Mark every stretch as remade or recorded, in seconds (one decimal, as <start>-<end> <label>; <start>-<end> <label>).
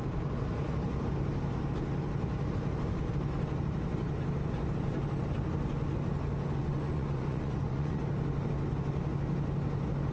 0.0-6.6 recorded; 6.6-8.0 remade; 8.0-10.1 recorded